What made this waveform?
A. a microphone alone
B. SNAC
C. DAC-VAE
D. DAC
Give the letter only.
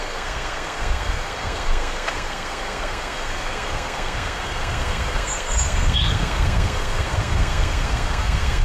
B